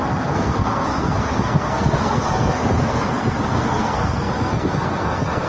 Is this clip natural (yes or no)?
no